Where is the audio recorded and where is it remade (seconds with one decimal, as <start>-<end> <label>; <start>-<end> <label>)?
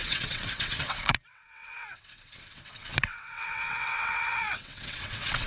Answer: 0.0-5.5 remade